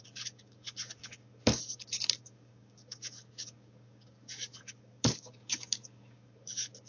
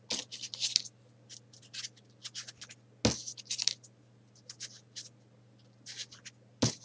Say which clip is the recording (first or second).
second